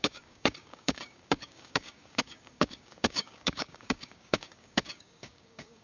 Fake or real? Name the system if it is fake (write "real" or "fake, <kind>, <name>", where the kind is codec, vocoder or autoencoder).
fake, codec, DAC